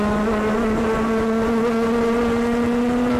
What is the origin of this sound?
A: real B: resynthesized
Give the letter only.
A